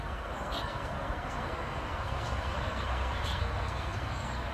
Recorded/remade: remade